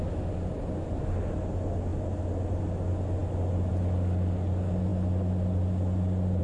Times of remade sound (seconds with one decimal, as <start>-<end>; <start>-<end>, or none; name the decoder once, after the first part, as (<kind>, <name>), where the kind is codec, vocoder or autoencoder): none